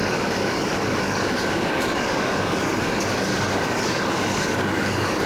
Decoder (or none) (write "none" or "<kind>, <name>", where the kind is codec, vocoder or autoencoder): codec, DAC